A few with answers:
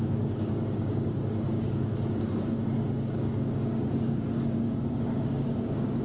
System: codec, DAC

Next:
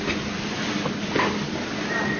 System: none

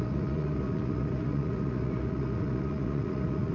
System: vocoder, Vocos